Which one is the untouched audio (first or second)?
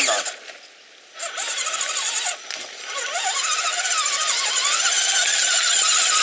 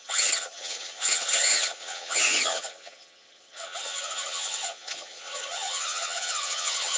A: first